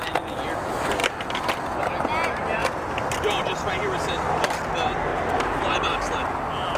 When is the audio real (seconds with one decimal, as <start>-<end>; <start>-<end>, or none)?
0.0-6.8